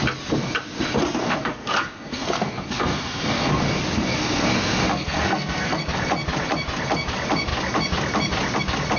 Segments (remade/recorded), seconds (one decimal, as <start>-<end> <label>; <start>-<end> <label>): 0.0-1.2 recorded; 1.2-3.5 remade; 3.5-4.2 recorded; 4.2-5.8 remade; 5.8-9.0 recorded